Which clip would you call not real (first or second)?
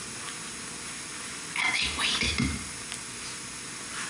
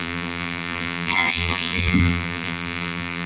second